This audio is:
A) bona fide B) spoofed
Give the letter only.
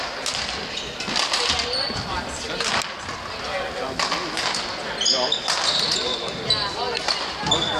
A